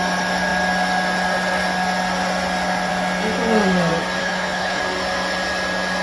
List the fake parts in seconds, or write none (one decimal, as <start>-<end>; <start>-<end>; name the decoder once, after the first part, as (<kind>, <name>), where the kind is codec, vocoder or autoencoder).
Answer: 4.2-4.8 (codec, HILCodec)